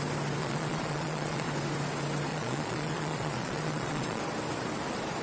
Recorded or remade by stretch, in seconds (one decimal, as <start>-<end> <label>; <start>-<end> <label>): 0.0-0.4 recorded; 0.4-1.5 remade; 1.5-2.3 recorded; 2.3-4.2 remade; 4.2-5.2 recorded